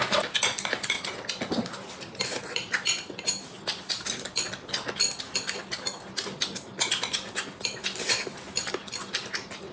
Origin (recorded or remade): recorded